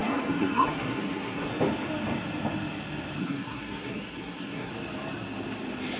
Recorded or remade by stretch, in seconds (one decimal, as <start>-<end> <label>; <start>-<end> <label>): 0.0-1.5 remade; 1.5-3.2 recorded; 3.2-4.7 remade; 4.7-6.0 recorded